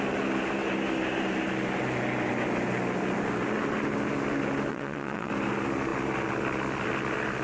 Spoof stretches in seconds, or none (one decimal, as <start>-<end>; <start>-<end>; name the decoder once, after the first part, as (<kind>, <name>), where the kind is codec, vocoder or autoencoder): 4.7-5.3 (vocoder, WaveNeXt)